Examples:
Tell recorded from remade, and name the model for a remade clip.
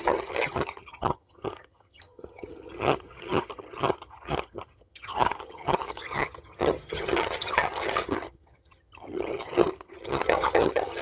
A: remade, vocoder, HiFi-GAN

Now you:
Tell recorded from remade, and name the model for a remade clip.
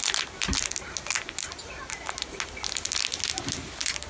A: recorded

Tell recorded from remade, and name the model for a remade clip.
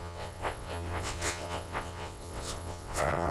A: remade, vocoder, WaveNeXt